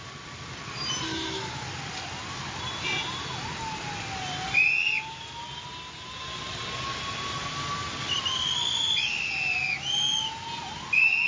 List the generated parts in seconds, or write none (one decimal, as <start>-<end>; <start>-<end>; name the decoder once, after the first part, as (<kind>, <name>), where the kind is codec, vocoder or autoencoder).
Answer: 1.1-1.7 (autoencoder, DAC-VAE)